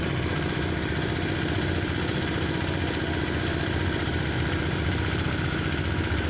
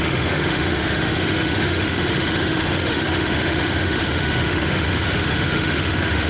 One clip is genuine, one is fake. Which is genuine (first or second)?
first